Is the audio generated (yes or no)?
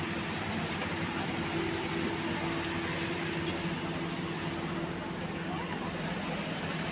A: no